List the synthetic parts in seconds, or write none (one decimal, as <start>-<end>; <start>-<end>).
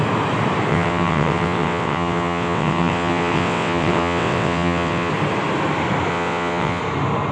0.7-5.1; 6.1-6.8